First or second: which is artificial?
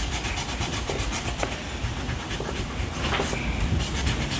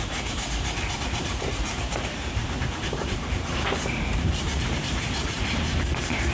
second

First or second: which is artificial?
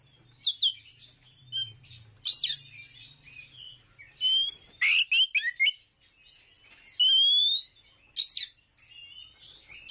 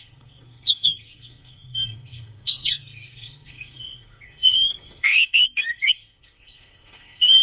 second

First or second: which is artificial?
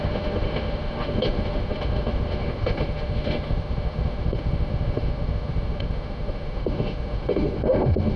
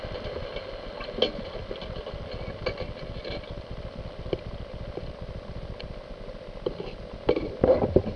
first